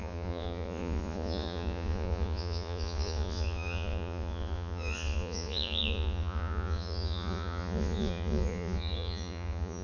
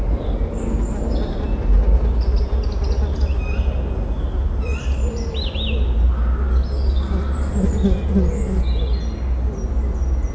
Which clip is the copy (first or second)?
first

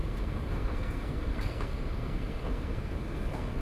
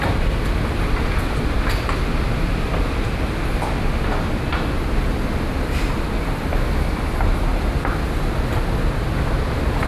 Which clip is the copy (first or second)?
first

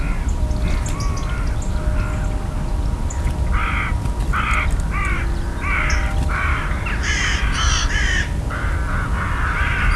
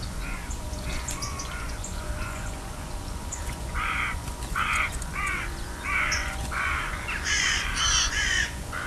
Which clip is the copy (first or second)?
second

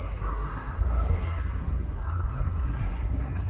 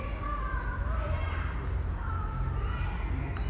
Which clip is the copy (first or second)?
first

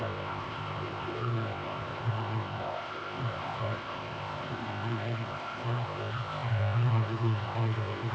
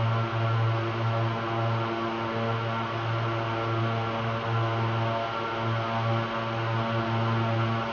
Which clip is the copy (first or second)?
first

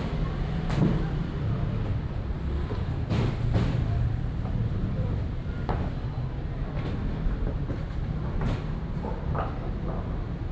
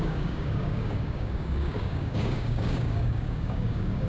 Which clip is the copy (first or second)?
second